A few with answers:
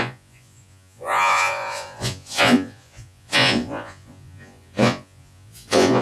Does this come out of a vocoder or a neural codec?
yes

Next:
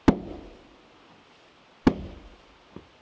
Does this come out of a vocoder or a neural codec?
no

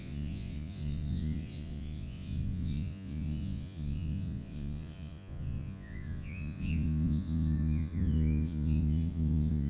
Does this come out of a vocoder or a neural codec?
yes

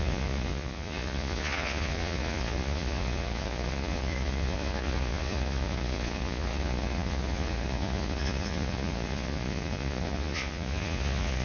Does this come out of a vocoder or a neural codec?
yes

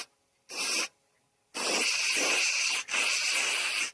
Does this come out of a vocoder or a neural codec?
no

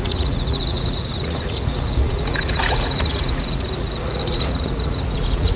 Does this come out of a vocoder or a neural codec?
yes